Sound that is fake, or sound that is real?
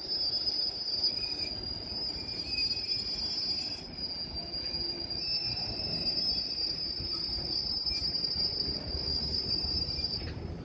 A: real